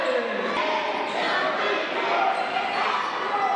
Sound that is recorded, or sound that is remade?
recorded